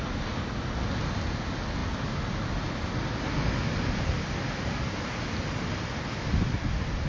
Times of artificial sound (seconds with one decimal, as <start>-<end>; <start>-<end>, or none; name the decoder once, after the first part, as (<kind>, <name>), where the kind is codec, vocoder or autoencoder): none